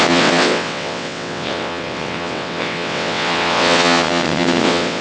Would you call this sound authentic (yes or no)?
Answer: no